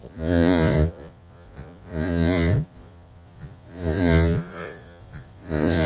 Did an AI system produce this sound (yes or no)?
yes